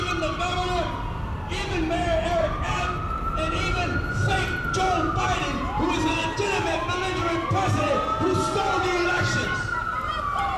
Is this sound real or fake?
real